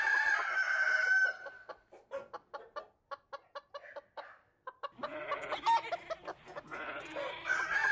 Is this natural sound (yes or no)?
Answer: yes